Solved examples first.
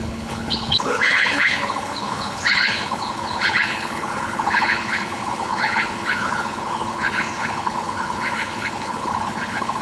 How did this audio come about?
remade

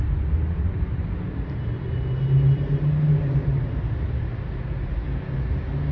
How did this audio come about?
recorded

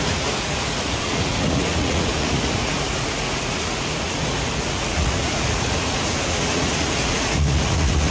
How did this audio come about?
remade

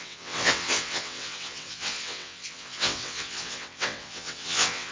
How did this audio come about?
remade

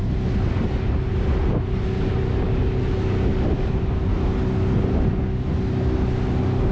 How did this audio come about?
recorded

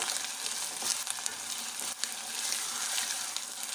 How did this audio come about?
recorded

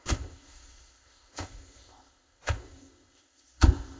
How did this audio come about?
remade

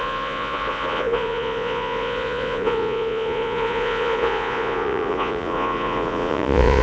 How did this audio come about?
remade